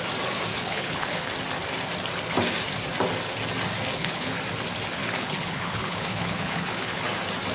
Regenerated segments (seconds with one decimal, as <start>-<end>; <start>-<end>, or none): 0.5-1.3; 3.9-4.4; 5.0-7.0